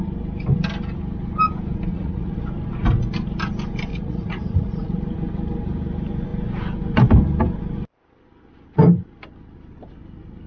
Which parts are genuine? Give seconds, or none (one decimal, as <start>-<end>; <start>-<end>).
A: 0.0-1.9; 2.4-3.9; 5.0-10.5